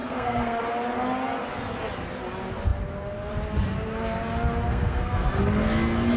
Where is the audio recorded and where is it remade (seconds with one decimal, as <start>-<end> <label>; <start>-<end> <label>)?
0.0-0.6 remade; 0.6-4.7 recorded; 4.7-5.4 remade; 5.4-6.2 recorded